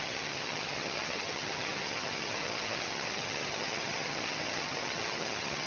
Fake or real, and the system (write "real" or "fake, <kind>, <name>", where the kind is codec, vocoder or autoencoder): fake, vocoder, HiFi-GAN